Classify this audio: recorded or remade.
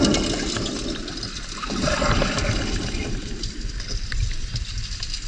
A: recorded